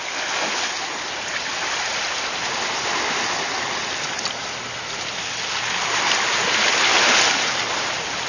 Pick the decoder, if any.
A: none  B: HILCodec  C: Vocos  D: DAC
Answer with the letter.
A